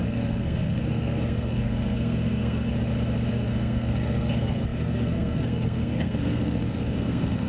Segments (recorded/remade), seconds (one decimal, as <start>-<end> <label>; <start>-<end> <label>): 0.0-2.7 remade; 2.7-3.3 recorded; 3.3-7.5 remade